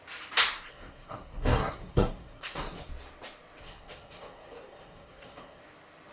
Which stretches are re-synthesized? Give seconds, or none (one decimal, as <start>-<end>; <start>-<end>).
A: 0.7-2.9; 3.6-5.6